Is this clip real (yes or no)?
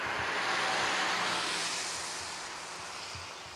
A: yes